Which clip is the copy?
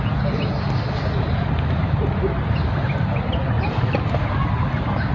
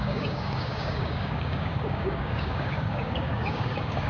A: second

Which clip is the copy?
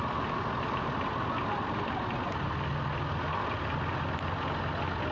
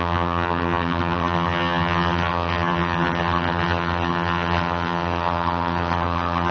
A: second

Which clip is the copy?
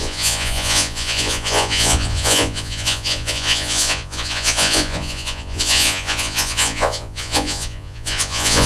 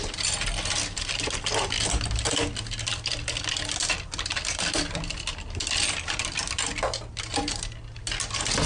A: first